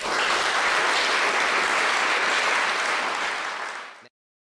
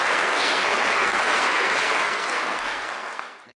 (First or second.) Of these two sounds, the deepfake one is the second